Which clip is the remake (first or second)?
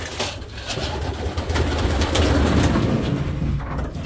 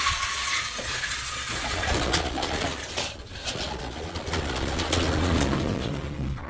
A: second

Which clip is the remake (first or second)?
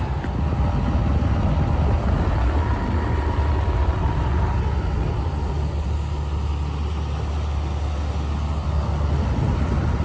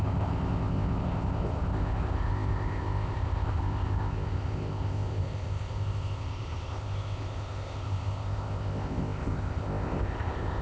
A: second